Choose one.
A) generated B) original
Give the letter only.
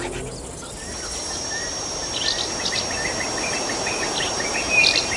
B